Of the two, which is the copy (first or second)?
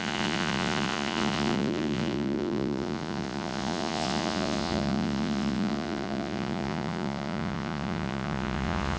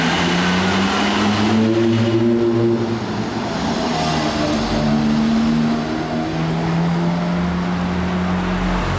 first